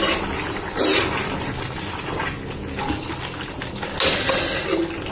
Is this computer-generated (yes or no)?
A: no